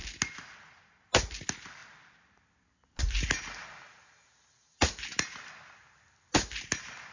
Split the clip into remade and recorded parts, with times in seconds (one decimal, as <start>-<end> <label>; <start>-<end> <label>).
0.0-7.1 recorded